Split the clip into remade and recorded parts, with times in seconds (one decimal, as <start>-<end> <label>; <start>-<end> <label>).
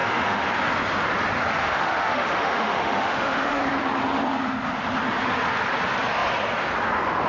0.0-0.5 remade; 0.5-1.6 recorded; 1.6-3.6 remade; 3.6-7.3 recorded